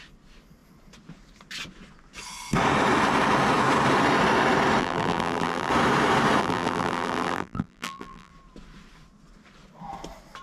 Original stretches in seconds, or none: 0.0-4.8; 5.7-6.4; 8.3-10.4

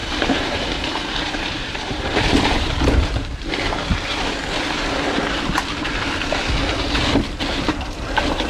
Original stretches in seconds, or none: 4.4-7.5

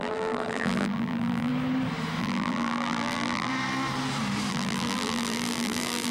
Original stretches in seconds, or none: 1.5-2.2; 3.5-4.5

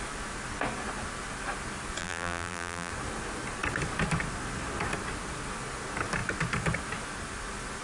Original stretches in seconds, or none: 0.0-2.0; 2.9-7.8

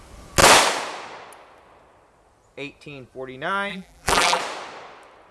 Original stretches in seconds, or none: 0.0-3.7; 4.4-5.3

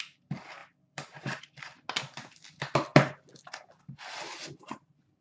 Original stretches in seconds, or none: 0.0-0.6; 1.4-5.2

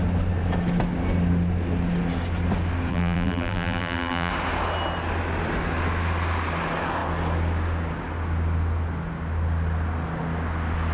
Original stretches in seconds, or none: 0.0-2.9; 4.3-10.9

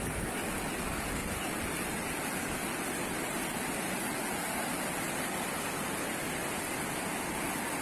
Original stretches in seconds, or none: 0.0-1.2; 2.2-2.6; 5.6-7.8